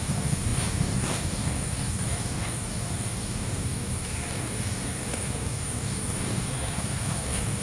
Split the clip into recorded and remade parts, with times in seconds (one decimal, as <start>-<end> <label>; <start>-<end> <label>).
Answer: 0.0-7.6 remade